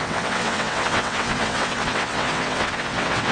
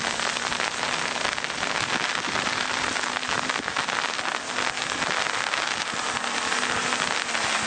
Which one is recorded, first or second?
second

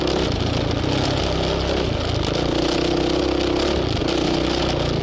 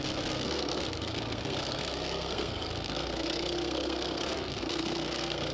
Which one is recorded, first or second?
first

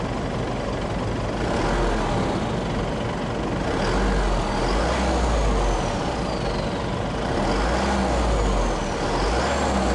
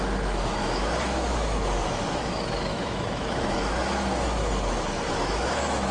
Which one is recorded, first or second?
first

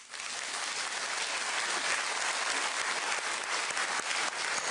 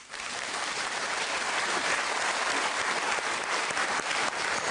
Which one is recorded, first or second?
first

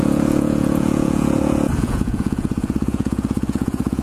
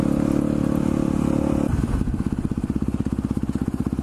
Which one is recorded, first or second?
second